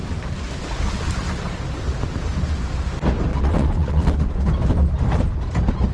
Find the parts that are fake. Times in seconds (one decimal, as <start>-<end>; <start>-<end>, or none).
3.3-4.3